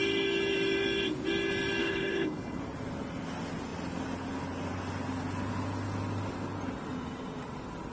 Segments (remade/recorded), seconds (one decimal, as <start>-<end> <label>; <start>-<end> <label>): 0.0-1.8 recorded; 1.8-2.6 remade; 2.6-7.9 recorded